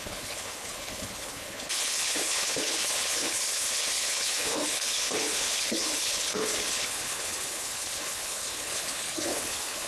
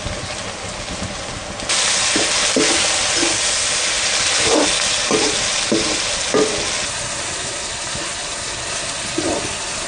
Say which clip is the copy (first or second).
first